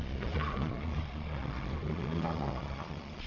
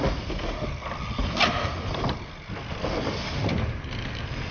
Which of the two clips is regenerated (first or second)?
first